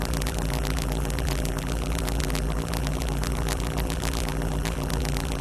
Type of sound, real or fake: fake